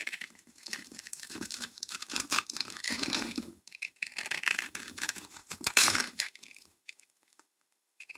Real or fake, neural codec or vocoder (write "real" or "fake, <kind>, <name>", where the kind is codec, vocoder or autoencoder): fake, autoencoder, DAC-VAE